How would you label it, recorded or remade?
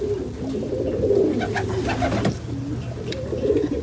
recorded